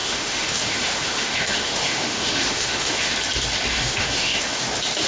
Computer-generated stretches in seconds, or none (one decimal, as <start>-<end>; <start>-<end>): 0.0-3.1; 3.7-4.6